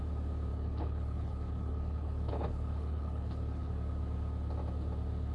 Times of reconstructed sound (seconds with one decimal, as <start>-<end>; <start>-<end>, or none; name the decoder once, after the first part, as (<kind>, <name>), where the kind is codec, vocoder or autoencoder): 0.5-3.7 (codec, HILCodec)